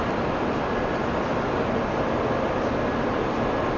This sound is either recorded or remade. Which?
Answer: recorded